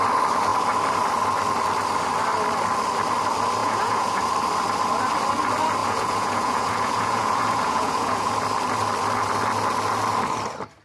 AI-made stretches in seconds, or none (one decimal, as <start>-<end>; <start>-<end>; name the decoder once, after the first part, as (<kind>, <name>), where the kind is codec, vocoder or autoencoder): 3.6-4.2 (vocoder, Vocos); 5.8-8.3